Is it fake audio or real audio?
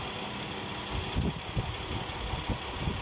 real